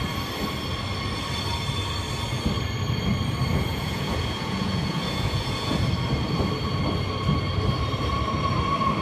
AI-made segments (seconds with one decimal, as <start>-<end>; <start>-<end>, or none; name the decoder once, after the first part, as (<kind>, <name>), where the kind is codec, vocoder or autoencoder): 3.5-5.9 (vocoder, Vocos)

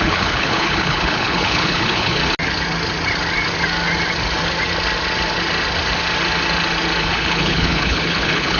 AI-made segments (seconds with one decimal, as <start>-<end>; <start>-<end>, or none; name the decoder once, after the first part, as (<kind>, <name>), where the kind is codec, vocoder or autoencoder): 0.0-2.2 (codec, HILCodec); 7.0-8.6

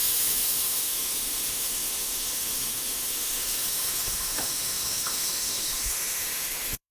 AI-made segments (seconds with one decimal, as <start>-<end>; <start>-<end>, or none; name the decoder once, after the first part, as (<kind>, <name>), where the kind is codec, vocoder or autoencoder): 0.0-6.9 (autoencoder, DAC-VAE)